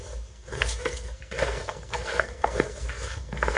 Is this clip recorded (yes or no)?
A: no